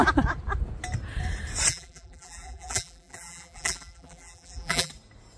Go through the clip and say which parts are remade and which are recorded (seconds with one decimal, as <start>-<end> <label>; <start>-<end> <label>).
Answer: 0.0-1.7 recorded; 1.7-4.9 remade; 4.9-5.4 recorded

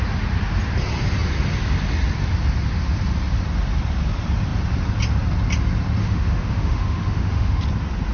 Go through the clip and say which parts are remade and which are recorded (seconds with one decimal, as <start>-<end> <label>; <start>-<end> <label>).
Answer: 0.0-6.0 recorded; 6.0-7.6 remade; 7.6-8.1 recorded

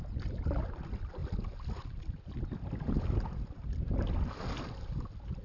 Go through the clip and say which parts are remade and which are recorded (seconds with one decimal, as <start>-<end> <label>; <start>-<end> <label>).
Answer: 0.0-5.4 recorded

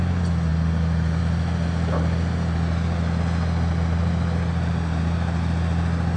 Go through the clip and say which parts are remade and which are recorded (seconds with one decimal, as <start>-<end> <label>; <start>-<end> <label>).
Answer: 0.0-6.2 recorded

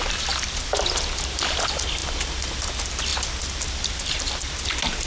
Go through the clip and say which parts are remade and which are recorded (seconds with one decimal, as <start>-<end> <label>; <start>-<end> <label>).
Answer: 0.0-5.1 recorded

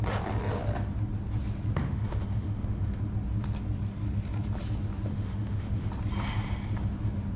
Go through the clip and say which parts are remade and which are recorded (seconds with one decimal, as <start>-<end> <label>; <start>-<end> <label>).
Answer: 0.0-1.8 recorded; 1.8-3.0 remade; 3.0-5.1 recorded; 5.1-5.9 remade; 5.9-7.4 recorded

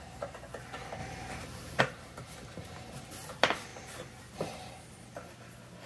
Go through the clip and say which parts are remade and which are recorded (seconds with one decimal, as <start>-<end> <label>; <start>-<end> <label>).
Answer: 0.0-1.0 recorded; 1.0-1.8 remade; 1.8-3.7 recorded; 3.7-4.3 remade; 4.3-5.9 recorded